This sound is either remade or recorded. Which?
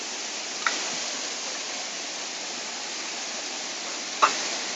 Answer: recorded